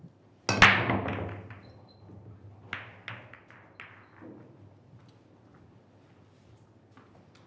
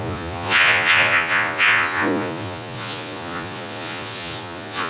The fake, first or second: second